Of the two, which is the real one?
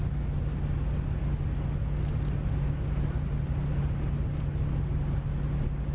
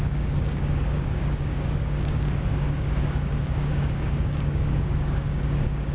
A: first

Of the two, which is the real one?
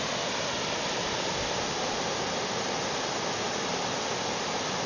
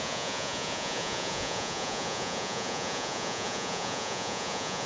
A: first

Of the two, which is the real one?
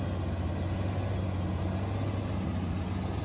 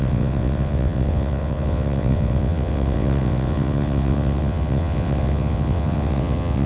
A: first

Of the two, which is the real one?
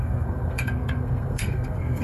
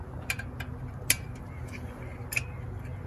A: second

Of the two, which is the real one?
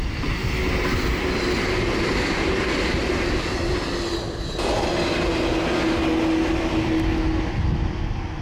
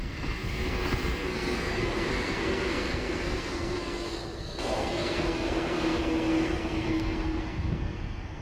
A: first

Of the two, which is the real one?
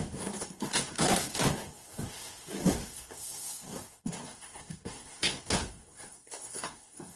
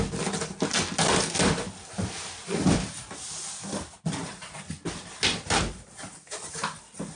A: second